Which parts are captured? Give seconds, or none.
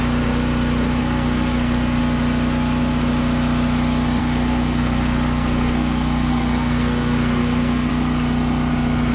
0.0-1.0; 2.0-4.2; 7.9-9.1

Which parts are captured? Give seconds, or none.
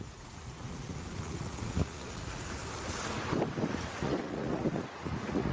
2.6-3.7